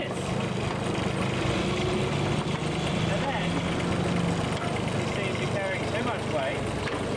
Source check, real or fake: real